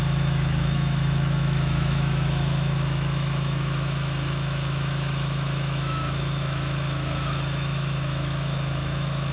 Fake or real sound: fake